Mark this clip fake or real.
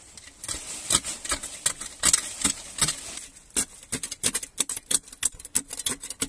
real